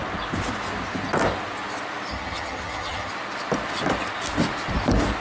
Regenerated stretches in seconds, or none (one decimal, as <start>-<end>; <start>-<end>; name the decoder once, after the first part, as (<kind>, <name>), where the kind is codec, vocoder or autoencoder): 2.1-3.1 (vocoder, HiFi-GAN)